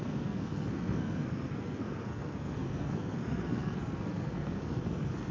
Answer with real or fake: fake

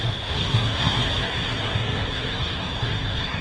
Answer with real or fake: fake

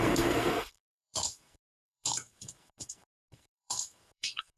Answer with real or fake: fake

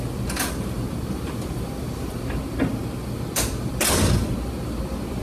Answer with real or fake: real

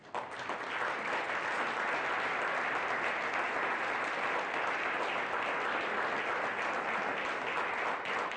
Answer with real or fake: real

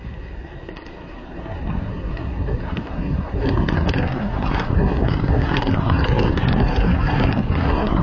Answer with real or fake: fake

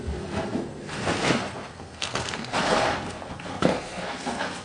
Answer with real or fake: fake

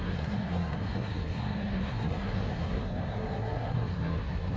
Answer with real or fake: fake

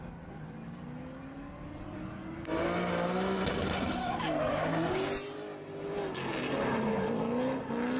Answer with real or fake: real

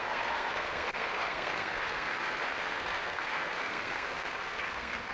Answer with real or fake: fake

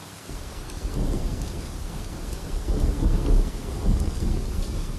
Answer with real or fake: fake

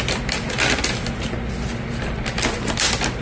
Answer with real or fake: real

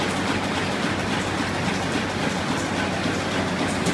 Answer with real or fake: real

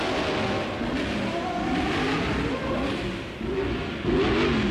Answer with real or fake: real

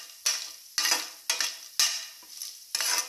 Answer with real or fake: real